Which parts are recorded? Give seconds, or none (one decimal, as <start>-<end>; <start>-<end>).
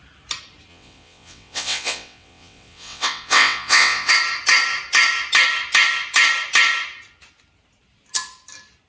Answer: 0.0-0.7; 4.1-8.9